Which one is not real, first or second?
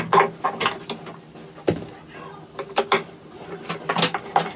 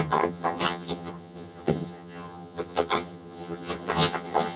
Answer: second